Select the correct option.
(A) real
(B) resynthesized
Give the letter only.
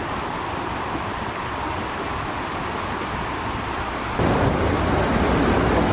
A